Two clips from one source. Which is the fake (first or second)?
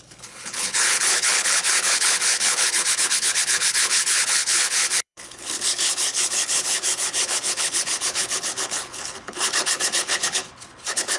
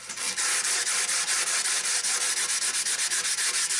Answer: first